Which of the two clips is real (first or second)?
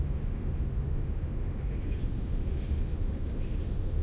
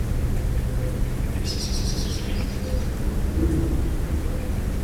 second